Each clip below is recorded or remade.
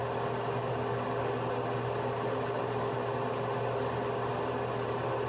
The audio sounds recorded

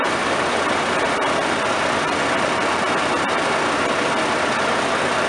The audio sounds recorded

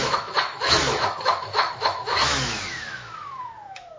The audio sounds remade